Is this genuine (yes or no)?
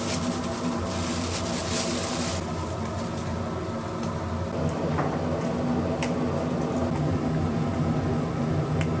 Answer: yes